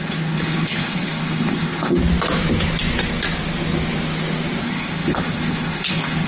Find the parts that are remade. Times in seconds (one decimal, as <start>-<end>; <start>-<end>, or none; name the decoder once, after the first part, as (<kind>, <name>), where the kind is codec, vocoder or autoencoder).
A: 0.0-2.0 (codec, HILCodec); 4.6-6.3